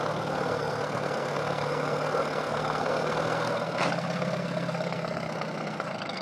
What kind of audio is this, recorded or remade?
remade